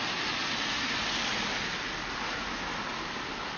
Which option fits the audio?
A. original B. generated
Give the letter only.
A